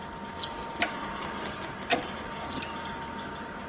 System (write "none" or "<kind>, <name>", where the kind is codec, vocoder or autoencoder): none